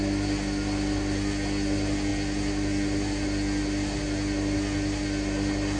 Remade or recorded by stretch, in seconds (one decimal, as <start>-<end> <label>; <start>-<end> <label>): 0.0-5.8 recorded